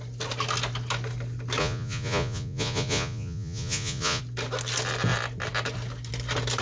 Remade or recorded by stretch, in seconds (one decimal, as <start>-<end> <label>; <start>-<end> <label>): 0.0-1.6 recorded; 1.6-4.2 remade; 4.2-6.6 recorded